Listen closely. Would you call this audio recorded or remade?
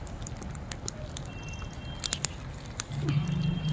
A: recorded